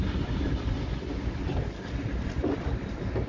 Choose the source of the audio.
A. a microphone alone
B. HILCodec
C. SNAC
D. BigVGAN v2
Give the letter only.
A